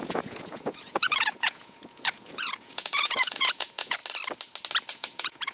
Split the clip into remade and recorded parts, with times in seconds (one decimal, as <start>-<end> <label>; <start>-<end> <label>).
0.0-4.0 remade; 4.0-4.9 recorded; 4.9-5.5 remade